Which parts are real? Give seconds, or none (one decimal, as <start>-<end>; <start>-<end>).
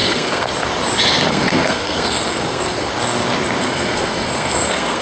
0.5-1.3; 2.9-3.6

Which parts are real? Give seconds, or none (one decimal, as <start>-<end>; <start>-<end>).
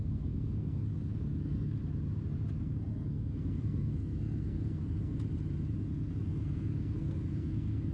1.8-2.6; 5.1-5.8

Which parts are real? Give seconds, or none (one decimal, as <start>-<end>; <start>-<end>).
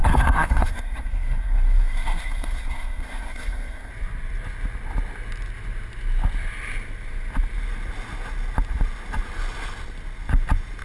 3.9-10.8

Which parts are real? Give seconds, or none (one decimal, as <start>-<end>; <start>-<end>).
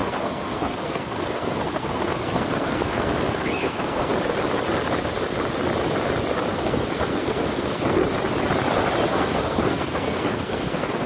4.1-6.5; 8.0-9.1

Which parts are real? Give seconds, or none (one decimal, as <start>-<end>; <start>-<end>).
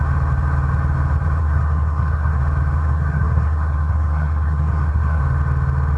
0.0-1.4; 2.4-2.8; 5.2-6.0